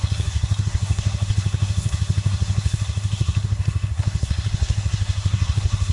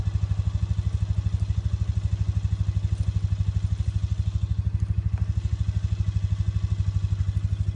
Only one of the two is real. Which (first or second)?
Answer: second